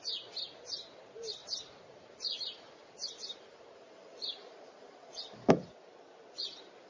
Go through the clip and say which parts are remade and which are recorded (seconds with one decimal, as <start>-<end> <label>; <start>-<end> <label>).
0.0-1.4 recorded; 1.4-5.5 remade; 5.5-6.9 recorded